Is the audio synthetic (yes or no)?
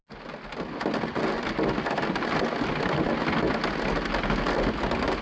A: no